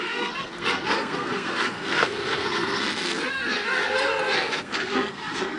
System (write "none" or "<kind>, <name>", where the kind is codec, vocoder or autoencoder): codec, SNAC